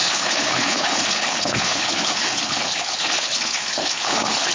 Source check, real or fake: fake